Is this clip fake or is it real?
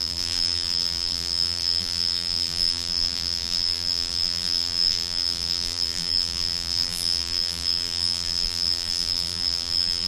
fake